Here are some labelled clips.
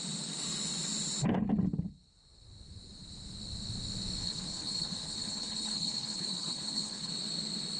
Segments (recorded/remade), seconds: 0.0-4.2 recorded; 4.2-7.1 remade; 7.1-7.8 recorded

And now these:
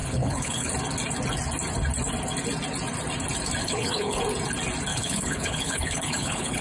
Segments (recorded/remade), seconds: 0.0-0.7 remade; 0.7-3.6 recorded; 3.6-4.2 remade; 4.2-4.9 recorded; 4.9-6.6 remade

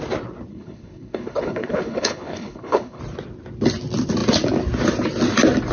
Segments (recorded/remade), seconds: 0.0-0.5 recorded; 0.5-3.0 remade; 3.0-5.7 recorded

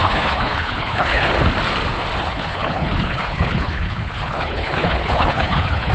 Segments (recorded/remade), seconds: 0.0-1.3 remade; 1.3-2.2 recorded; 2.2-5.9 remade

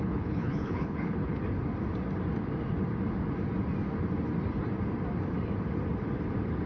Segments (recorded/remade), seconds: 0.0-1.4 remade; 1.4-6.7 recorded

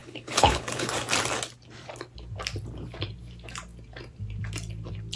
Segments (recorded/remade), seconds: 0.0-0.9 remade; 0.9-5.2 recorded

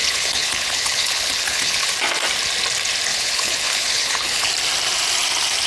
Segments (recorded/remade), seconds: 0.0-1.9 remade; 1.9-3.1 recorded; 3.1-4.5 remade; 4.5-5.7 recorded